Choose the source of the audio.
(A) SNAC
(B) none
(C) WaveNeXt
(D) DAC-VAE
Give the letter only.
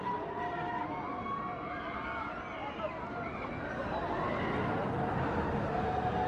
B